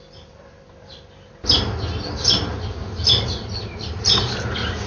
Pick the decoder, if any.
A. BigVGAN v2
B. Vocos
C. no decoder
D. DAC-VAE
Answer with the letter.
C